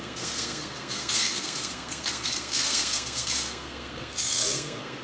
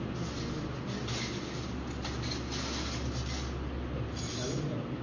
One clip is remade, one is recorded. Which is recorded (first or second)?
second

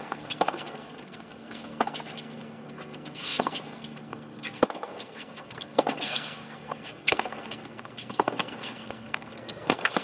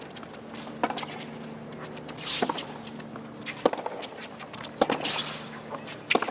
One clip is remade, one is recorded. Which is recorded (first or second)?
second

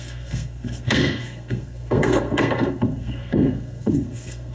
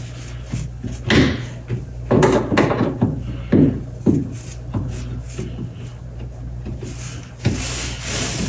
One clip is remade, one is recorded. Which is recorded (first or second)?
second